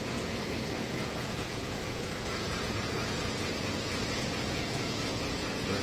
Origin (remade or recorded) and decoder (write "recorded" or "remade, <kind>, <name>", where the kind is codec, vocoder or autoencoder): remade, vocoder, Vocos